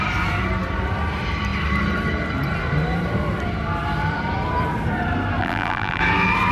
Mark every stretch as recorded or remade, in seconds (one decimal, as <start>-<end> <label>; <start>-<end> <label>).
0.0-5.4 recorded; 5.4-6.0 remade; 6.0-6.5 recorded